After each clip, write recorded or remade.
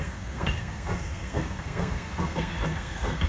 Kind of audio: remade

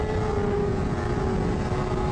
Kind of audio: recorded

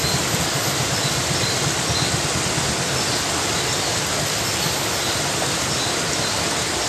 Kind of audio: recorded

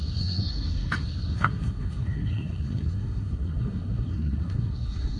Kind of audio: remade